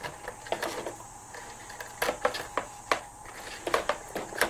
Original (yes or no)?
yes